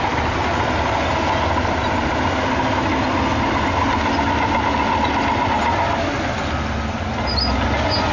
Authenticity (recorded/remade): recorded